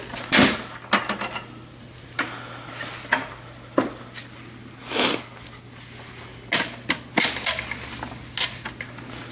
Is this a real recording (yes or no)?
yes